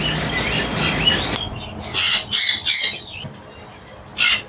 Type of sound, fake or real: real